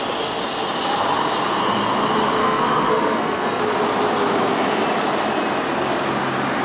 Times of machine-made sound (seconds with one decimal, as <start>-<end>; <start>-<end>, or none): 2.4-3.6